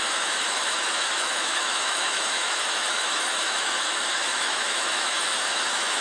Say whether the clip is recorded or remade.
remade